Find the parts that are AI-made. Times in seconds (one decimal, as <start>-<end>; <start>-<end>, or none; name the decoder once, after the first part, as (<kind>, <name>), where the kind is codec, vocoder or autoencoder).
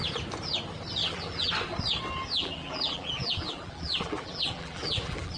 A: 1.0-1.5 (vocoder, BigVGAN v2); 2.4-5.4